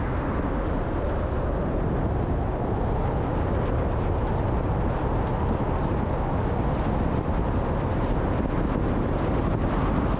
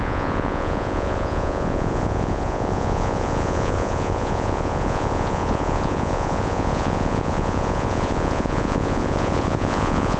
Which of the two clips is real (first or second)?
first